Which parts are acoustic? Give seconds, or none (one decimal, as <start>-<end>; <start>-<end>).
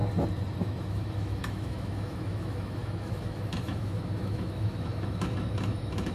0.0-0.6